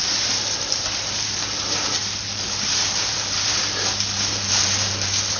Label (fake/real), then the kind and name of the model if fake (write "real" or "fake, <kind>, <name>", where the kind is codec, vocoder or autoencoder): fake, vocoder, BigVGAN v2